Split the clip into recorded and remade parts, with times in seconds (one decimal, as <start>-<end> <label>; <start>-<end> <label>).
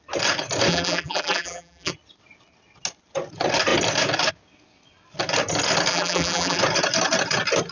0.0-0.7 recorded; 0.7-1.9 remade; 1.9-5.9 recorded; 5.9-6.6 remade; 6.6-7.7 recorded